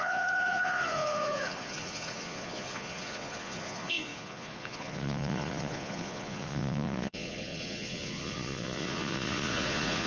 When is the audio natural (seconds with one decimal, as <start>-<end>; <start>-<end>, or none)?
none